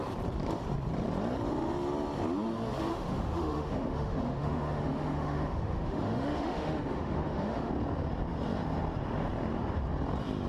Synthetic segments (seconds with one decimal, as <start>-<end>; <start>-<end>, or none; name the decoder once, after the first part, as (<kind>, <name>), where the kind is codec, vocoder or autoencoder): 2.9-7.7 (autoencoder, DAC-VAE)